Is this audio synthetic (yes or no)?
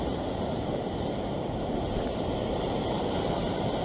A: yes